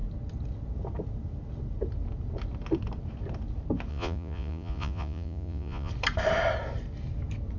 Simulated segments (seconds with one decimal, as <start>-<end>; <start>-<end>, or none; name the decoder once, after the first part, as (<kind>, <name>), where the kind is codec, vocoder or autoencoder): 3.9-5.9 (vocoder, Vocos)